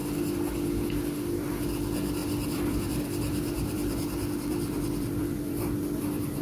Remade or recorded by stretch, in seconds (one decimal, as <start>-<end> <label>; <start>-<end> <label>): 0.0-2.2 recorded; 2.2-6.0 remade; 6.0-6.4 recorded